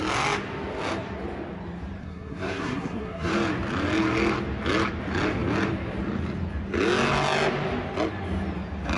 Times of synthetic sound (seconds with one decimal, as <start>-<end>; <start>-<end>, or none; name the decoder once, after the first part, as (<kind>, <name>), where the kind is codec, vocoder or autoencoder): 2.0-3.3 (codec, SNAC)